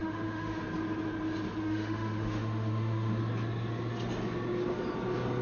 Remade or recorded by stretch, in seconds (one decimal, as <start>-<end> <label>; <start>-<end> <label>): 0.0-0.6 remade; 0.6-1.6 recorded; 1.6-3.2 remade; 3.2-5.4 recorded